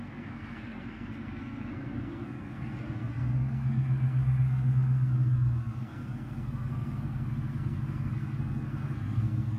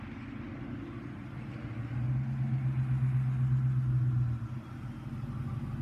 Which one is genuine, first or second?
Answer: second